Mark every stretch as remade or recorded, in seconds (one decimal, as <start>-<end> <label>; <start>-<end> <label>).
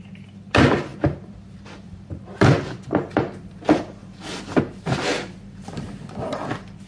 0.0-0.9 recorded; 0.9-4.4 remade; 4.4-6.9 recorded